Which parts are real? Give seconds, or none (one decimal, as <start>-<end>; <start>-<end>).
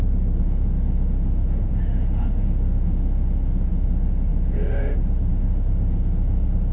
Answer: none